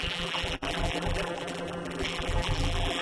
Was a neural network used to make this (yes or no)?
yes